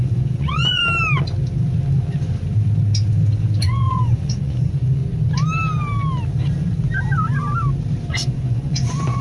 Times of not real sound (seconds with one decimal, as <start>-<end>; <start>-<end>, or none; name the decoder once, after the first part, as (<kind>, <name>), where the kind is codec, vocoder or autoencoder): 0.0-0.8 (vocoder, Vocos); 3.6-5.0; 8.1-9.2